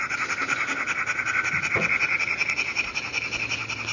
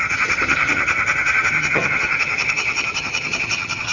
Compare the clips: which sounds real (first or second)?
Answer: first